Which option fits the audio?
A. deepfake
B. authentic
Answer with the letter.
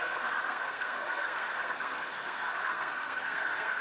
A